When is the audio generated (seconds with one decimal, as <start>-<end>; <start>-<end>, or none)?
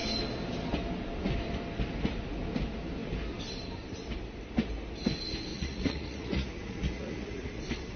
5.5-7.6